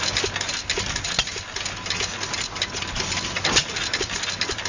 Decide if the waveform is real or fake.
real